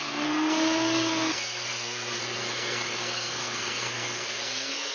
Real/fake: fake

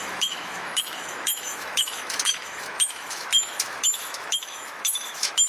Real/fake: fake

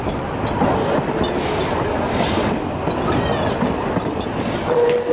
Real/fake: real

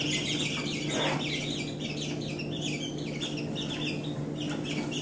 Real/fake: real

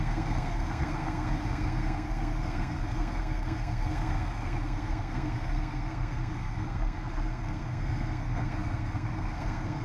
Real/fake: fake